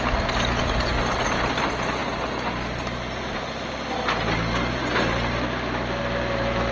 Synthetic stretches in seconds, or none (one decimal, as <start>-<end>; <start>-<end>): none